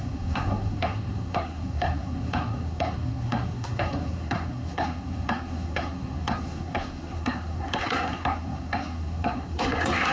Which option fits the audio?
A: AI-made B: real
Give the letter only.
A